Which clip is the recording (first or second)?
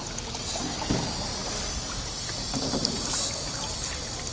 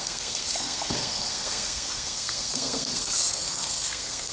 first